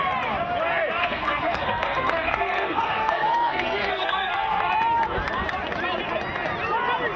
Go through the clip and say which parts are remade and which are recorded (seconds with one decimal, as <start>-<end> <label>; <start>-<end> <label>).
0.0-1.0 recorded; 1.0-4.7 remade; 4.7-7.2 recorded